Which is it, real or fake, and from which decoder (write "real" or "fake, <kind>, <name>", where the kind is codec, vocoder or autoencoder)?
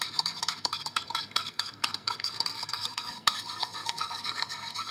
fake, codec, SNAC